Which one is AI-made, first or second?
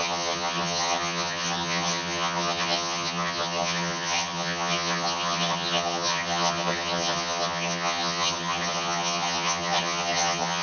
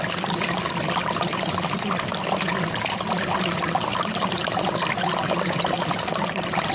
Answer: first